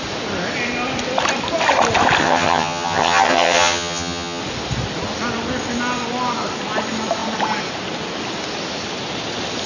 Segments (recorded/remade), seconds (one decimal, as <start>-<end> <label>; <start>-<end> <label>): 0.0-2.2 recorded; 2.2-4.4 remade; 4.4-9.7 recorded